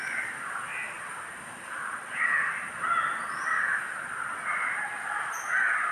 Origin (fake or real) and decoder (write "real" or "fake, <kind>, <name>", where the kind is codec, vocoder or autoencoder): real